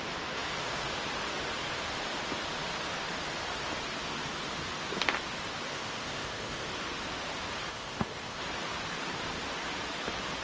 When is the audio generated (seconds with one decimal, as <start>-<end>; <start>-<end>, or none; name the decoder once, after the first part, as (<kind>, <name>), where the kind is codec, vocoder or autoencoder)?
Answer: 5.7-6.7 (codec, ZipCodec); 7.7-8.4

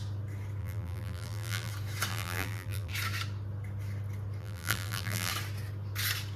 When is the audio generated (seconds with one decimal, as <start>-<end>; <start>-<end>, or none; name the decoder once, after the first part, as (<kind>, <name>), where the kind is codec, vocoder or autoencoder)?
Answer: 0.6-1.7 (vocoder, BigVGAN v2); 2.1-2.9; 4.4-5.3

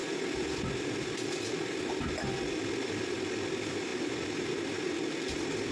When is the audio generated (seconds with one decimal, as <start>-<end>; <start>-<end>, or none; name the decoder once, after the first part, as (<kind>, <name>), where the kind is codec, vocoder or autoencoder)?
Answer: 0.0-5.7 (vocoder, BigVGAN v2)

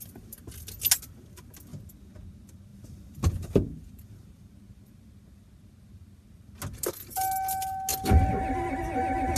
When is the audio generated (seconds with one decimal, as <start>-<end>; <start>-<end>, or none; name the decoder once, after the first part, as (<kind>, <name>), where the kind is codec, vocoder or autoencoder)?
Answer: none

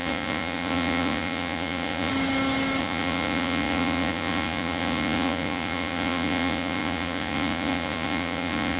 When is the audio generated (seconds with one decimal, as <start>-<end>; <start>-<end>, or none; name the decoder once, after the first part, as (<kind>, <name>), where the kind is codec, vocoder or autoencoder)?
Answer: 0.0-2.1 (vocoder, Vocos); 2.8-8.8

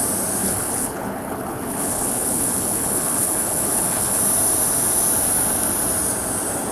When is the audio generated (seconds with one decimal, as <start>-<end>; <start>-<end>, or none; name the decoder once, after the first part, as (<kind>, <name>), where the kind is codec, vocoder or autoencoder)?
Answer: 0.4-4.2 (codec, HILCodec)

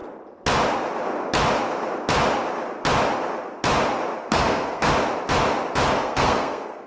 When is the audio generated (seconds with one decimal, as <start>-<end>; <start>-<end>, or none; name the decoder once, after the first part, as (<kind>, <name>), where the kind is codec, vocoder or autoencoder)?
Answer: 4.2-4.9 (codec, SNAC); 6.0-6.9

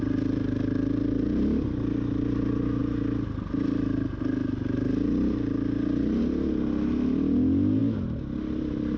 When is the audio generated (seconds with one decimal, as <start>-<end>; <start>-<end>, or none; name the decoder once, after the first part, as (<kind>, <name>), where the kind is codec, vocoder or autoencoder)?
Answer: none